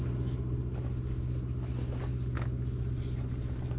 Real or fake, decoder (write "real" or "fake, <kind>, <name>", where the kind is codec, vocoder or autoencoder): real